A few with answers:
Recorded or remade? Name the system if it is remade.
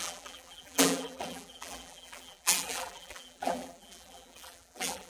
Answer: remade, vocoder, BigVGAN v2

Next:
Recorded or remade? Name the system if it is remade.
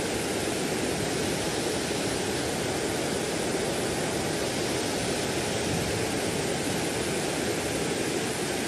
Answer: recorded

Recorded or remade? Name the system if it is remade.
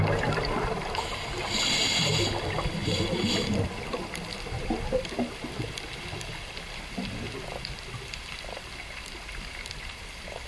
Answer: remade, vocoder, BigVGAN v2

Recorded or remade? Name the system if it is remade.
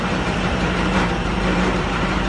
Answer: remade, vocoder, BigVGAN v2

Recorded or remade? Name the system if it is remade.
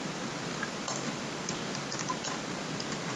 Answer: remade, vocoder, BigVGAN v2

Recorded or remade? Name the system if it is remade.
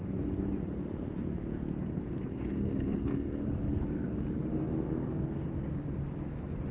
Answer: recorded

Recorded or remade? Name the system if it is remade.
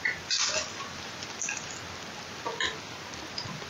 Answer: recorded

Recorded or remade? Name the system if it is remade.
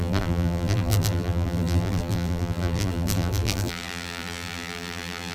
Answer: remade, vocoder, BigVGAN v2